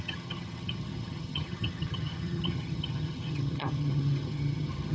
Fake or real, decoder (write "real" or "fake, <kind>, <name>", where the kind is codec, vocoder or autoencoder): fake, vocoder, HiFi-GAN